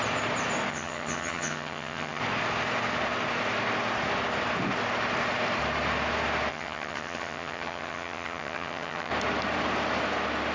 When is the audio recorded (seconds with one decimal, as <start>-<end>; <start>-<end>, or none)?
0.0-0.7; 2.2-6.5; 9.1-10.5